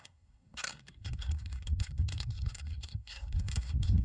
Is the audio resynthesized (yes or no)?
yes